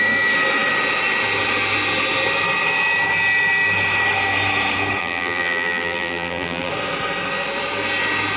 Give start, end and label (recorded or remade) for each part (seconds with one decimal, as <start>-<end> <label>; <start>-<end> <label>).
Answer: 0.0-5.0 recorded; 5.0-6.7 remade; 6.7-8.4 recorded

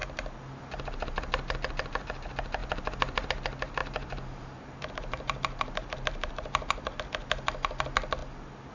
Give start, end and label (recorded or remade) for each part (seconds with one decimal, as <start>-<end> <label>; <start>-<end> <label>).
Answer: 0.0-3.8 recorded; 3.8-7.0 remade; 7.0-8.7 recorded

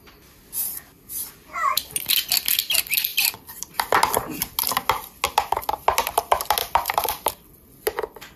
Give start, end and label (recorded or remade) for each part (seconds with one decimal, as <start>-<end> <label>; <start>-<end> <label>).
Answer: 0.0-3.1 recorded; 3.1-3.8 remade; 3.8-6.6 recorded; 6.6-7.3 remade; 7.3-8.4 recorded

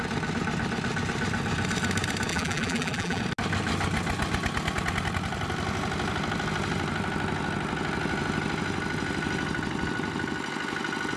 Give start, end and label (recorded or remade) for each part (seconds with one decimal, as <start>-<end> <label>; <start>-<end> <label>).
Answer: 0.0-2.3 recorded; 2.3-3.2 remade; 3.2-11.2 recorded

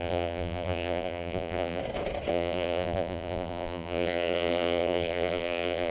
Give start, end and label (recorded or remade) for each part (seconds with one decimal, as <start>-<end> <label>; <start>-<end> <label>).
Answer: 0.0-1.8 remade; 1.8-2.3 recorded; 2.3-5.9 remade